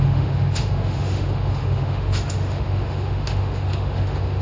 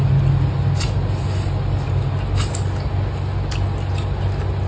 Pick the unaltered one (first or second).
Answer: second